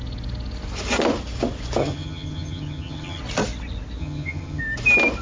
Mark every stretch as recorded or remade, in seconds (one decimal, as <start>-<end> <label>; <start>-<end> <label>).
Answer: 0.0-1.8 recorded; 1.8-3.2 remade; 3.2-4.0 recorded; 4.0-4.6 remade; 4.6-5.2 recorded